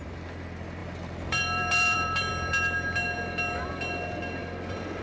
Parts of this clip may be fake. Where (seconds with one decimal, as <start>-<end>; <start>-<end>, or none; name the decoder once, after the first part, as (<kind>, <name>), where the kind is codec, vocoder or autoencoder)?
0.8-2.3 (vocoder, BigVGAN v2)